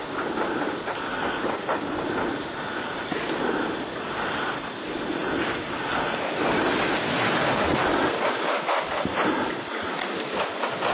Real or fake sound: real